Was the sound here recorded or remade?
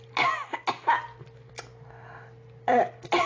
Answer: recorded